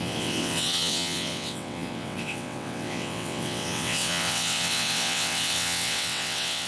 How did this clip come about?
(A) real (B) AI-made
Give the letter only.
B